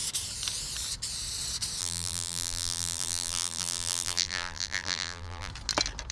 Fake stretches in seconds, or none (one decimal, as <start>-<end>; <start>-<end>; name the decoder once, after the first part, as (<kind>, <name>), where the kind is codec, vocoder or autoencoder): 1.8-5.5 (vocoder, BigVGAN v2)